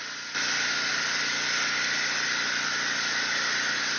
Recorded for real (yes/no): yes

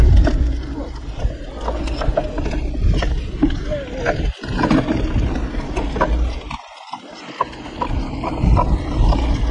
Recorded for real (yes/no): yes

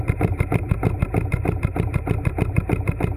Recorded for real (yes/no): no